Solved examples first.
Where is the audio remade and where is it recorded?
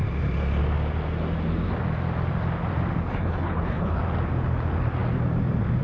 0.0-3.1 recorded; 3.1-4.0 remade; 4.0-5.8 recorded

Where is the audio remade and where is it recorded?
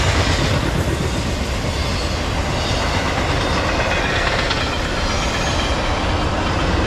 0.0-4.0 recorded; 4.0-4.6 remade; 4.6-6.9 recorded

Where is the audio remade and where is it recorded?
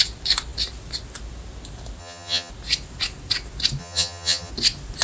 0.0-2.0 recorded; 2.0-2.5 remade; 2.5-3.8 recorded; 3.8-4.5 remade; 4.5-5.0 recorded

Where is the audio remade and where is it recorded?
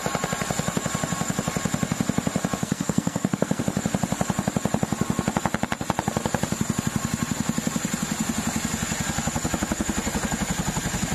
0.0-2.6 recorded; 2.6-3.6 remade; 3.6-11.1 recorded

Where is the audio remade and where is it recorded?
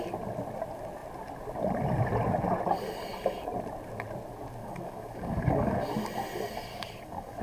0.0-4.6 recorded; 4.6-5.8 remade; 5.8-6.7 recorded; 6.7-7.4 remade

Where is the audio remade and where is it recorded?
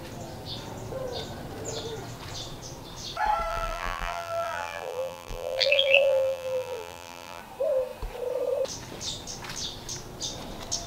0.0-3.5 recorded; 3.5-7.4 remade; 7.4-10.9 recorded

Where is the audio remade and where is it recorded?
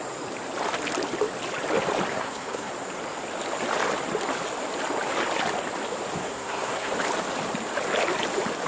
0.0-2.1 recorded; 2.1-2.7 remade; 2.7-6.2 recorded; 6.2-6.9 remade; 6.9-8.7 recorded